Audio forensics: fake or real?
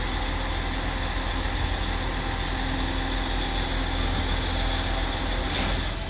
real